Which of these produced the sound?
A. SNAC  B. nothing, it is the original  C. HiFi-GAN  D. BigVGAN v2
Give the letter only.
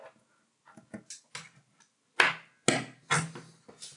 B